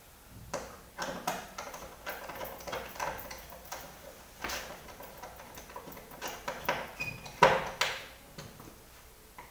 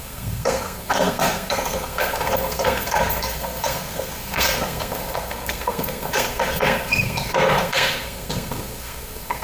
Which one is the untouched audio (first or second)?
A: first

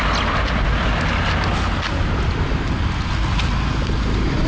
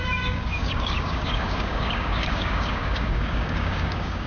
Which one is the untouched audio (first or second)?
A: first